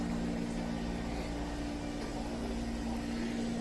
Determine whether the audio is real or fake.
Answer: real